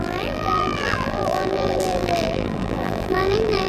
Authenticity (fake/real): fake